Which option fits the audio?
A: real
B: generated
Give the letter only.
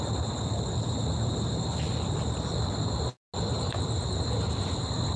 A